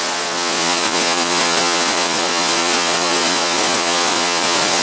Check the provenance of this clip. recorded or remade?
remade